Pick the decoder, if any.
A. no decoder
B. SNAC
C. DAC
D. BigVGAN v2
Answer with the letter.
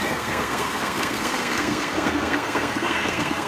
B